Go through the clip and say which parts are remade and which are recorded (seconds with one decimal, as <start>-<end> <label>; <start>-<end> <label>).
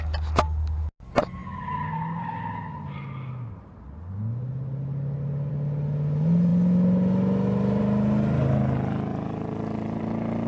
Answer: 0.0-9.1 recorded; 9.1-10.0 remade; 10.0-10.5 recorded